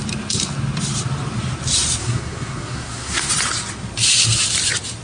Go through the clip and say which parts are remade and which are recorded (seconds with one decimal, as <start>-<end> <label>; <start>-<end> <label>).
0.0-2.0 recorded; 2.0-3.3 remade; 3.3-5.0 recorded